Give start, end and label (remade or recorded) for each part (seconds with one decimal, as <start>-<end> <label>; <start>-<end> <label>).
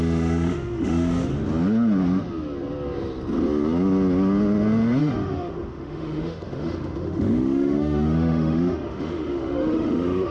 0.0-1.3 remade; 1.3-5.0 recorded; 5.0-10.3 remade